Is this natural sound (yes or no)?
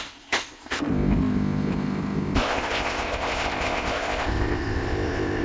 no